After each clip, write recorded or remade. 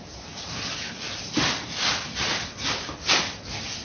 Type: recorded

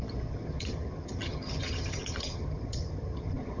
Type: remade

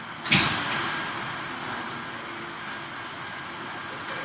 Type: recorded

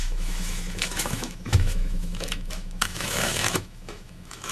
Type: remade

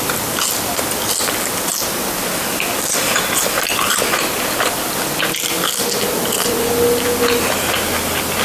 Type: recorded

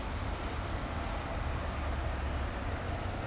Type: recorded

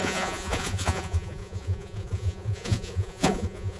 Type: remade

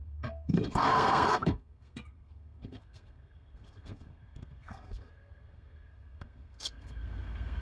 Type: remade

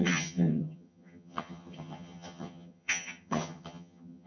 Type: remade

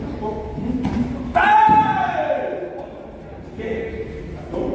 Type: recorded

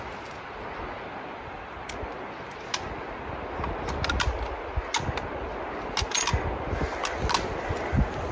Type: recorded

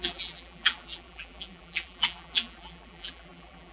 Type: remade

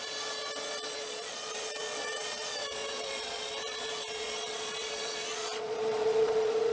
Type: remade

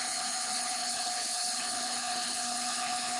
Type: remade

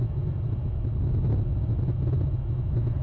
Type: recorded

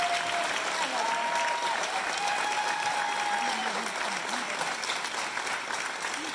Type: recorded